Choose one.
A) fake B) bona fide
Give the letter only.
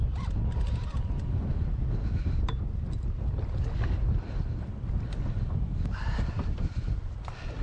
B